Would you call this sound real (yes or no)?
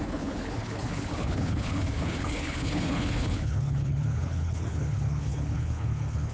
no